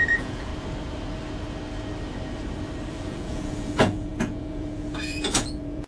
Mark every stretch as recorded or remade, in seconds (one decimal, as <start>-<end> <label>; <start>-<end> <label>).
0.0-0.5 remade; 0.5-2.9 recorded; 2.9-5.9 remade